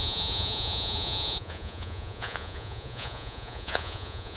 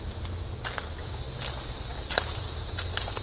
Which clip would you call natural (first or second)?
second